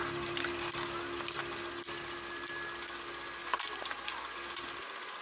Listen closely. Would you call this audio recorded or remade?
recorded